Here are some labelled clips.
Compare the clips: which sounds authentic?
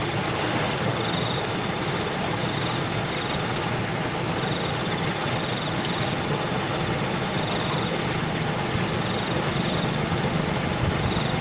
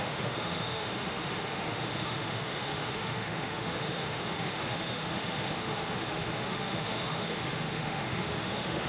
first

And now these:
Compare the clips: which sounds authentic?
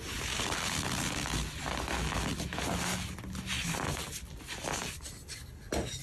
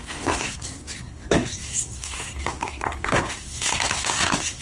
first